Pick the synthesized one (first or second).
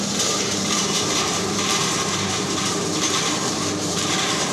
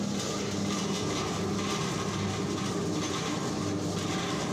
first